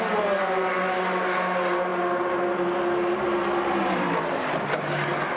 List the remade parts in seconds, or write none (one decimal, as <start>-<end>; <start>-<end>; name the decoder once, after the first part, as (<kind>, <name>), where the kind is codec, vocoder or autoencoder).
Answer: none